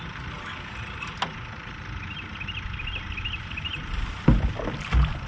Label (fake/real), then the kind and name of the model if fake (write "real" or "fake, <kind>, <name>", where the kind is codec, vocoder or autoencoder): real